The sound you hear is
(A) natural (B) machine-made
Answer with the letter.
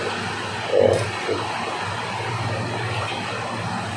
A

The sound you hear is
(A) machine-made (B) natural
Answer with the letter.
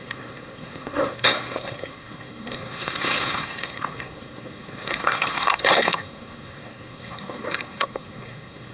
A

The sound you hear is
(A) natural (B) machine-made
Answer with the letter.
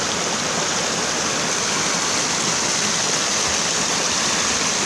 A